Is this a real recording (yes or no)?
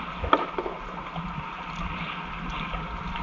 yes